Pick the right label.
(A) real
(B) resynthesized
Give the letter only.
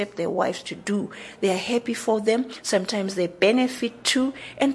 A